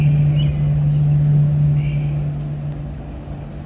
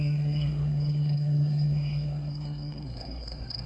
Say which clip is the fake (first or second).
second